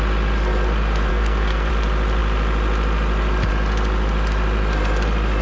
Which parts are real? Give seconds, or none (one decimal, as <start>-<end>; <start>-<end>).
0.0-1.1; 1.7-5.4